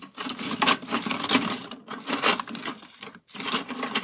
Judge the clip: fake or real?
real